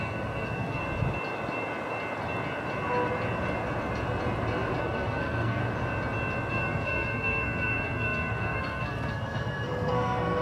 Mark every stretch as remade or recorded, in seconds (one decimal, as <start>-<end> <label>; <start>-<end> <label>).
0.0-0.8 remade; 0.8-4.8 recorded; 4.8-5.6 remade; 5.6-6.5 recorded; 6.5-10.4 remade